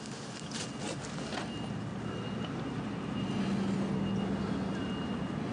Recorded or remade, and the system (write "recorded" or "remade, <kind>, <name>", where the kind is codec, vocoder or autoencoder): recorded